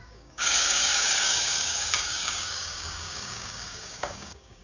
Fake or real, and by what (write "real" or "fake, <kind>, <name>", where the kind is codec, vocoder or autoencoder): fake, codec, DAC